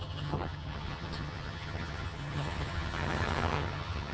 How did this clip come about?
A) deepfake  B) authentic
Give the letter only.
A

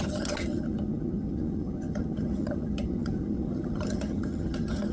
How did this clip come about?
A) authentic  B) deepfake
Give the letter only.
B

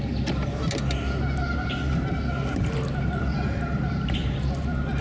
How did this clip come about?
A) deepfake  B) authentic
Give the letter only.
B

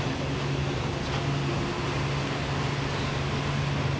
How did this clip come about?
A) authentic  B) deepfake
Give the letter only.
A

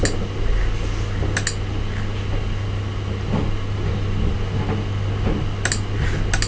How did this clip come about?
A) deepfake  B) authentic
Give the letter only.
B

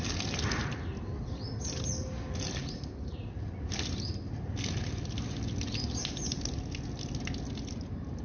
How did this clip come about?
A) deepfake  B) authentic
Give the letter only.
B